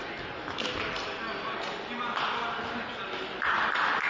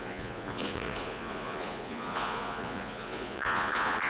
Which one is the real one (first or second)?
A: first